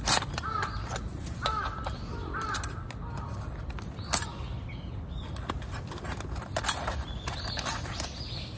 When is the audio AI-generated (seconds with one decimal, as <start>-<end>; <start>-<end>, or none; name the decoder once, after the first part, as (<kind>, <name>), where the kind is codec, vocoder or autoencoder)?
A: none